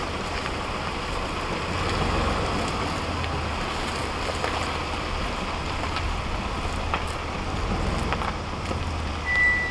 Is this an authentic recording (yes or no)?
yes